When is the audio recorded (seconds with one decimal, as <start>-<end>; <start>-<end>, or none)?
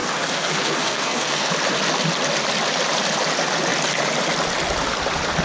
1.5-5.4